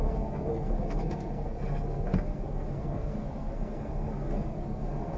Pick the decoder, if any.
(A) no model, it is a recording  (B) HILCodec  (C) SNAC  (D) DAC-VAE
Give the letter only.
C